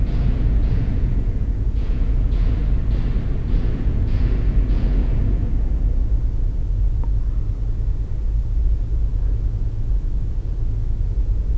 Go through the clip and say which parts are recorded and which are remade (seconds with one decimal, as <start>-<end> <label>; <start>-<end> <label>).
0.0-2.6 remade; 2.6-3.5 recorded; 3.5-11.6 remade